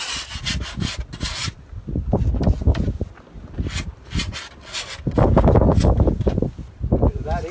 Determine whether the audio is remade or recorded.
recorded